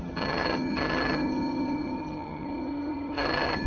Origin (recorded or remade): remade